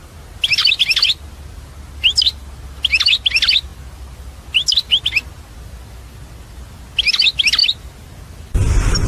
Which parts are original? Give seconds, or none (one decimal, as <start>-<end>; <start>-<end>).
0.0-9.1